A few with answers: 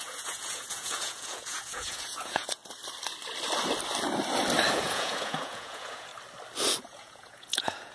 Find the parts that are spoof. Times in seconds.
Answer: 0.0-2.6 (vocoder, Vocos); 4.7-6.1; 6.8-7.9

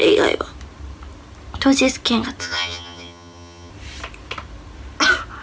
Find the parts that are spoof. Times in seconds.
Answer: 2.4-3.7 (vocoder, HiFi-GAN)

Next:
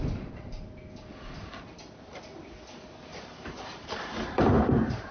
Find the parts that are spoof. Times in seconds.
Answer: 3.1-5.1 (vocoder, BigVGAN v2)

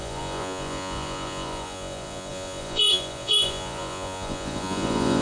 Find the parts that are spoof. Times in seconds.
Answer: 0.0-5.2 (vocoder, Vocos)

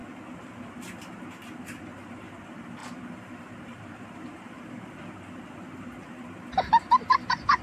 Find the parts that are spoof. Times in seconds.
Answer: 2.8-4.9 (vocoder, BigVGAN v2)

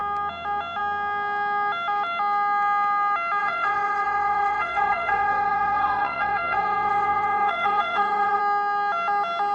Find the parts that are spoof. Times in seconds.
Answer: 3.4-8.4 (vocoder, WaveNeXt)

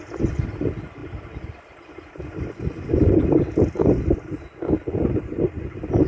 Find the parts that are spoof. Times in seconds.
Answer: none

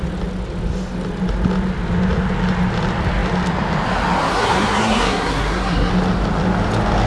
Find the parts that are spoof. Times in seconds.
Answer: 4.3-5.9 (codec, SNAC)